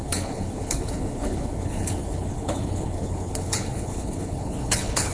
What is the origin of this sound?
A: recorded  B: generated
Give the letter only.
B